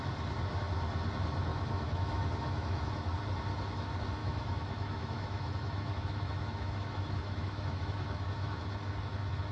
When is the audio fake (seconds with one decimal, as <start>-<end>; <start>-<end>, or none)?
1.5-2.9; 4.2-8.6